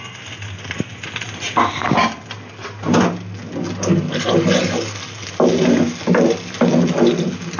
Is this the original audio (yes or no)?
yes